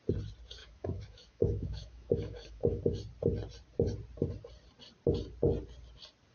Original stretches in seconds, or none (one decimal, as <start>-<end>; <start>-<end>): 0.0-0.6; 2.8-6.3